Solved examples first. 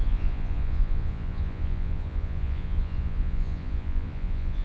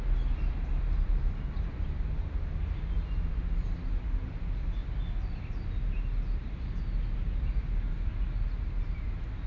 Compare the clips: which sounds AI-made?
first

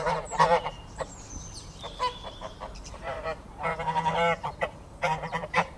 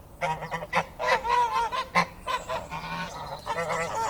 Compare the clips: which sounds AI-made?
first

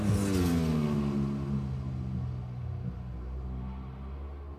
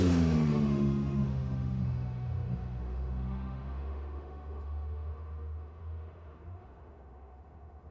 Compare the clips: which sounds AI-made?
second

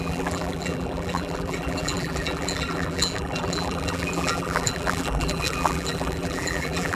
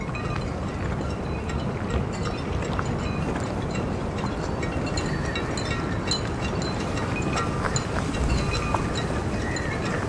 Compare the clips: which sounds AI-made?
first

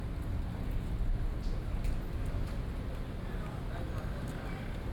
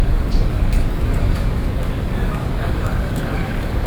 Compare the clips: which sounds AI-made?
second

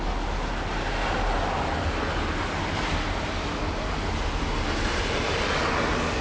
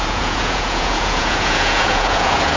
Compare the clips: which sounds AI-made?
second